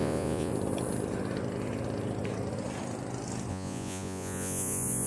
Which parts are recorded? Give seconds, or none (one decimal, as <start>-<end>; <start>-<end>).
0.5-3.5